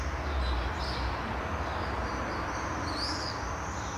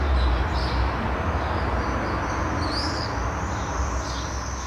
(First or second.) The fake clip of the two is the first